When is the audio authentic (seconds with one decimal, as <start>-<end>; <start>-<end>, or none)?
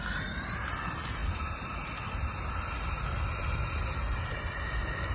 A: 0.0-5.1